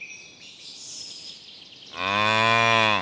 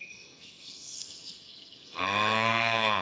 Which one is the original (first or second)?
first